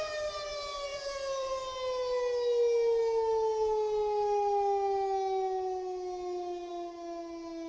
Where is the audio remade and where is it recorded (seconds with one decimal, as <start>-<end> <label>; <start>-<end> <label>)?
0.0-0.9 recorded; 0.9-1.5 remade; 1.5-7.7 recorded